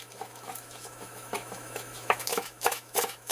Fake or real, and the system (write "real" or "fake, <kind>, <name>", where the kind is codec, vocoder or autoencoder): fake, autoencoder, DAC-VAE